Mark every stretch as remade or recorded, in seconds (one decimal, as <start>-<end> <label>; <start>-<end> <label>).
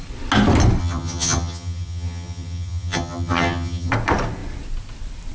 0.0-0.8 recorded; 0.8-3.9 remade; 3.9-5.3 recorded